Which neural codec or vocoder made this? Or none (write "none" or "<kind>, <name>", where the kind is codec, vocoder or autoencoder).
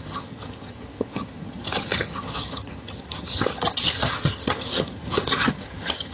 vocoder, HiFi-GAN